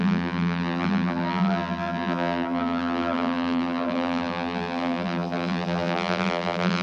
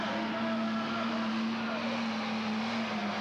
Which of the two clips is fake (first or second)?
first